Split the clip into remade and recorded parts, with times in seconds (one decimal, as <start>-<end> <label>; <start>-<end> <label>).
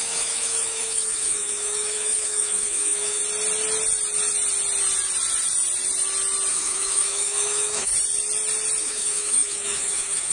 0.0-3.2 remade; 3.2-6.5 recorded; 6.5-7.9 remade; 7.9-8.8 recorded; 8.8-10.3 remade